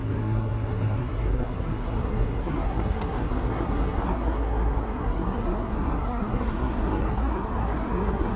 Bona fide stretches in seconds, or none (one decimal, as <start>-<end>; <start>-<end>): none